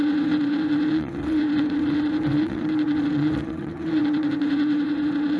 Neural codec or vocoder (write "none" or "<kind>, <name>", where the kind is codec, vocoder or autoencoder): vocoder, WaveNeXt